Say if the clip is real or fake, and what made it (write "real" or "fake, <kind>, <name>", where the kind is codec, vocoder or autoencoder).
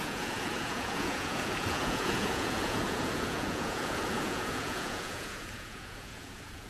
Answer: fake, vocoder, Vocos